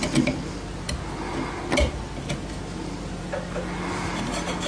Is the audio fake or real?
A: real